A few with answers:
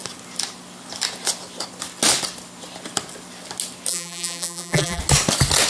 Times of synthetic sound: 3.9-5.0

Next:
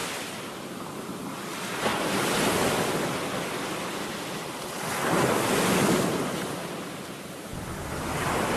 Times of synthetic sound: 0.0-1.9; 5.9-7.5; 8.0-8.6

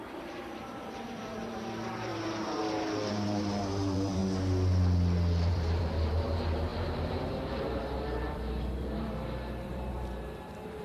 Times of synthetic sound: 0.0-2.1; 3.1-4.2; 5.5-10.8

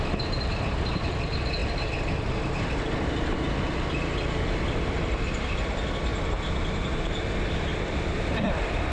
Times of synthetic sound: 0.0-8.9

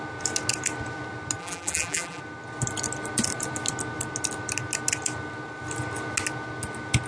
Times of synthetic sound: 1.4-2.2

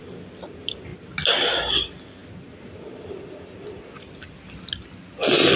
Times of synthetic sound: none

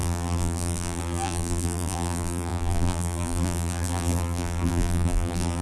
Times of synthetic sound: 0.0-5.6